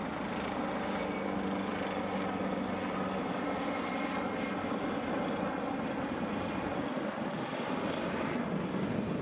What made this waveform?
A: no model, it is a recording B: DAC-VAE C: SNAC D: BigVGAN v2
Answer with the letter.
A